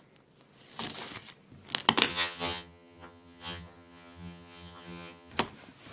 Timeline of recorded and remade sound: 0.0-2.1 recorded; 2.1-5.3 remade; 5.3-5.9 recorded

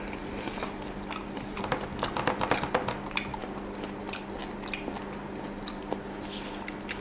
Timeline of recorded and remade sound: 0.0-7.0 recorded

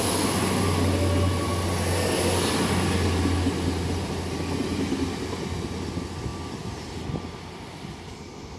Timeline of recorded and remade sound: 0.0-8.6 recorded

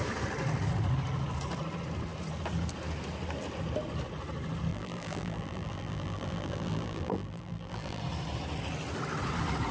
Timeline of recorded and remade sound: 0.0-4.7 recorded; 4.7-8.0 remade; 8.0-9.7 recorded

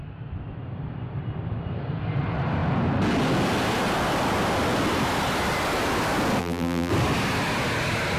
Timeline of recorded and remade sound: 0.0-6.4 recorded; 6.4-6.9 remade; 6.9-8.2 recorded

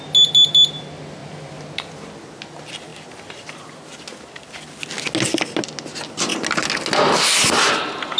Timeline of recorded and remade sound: 0.0-8.2 recorded